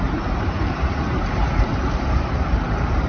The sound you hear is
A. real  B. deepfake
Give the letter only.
B